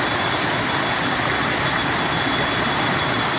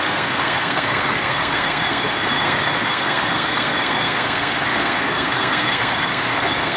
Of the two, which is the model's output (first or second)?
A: second